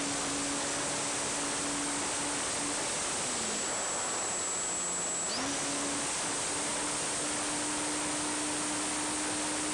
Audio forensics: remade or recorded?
recorded